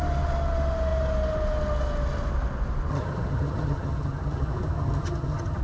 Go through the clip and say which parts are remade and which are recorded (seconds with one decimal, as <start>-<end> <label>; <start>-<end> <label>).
0.0-2.9 recorded; 2.9-5.6 remade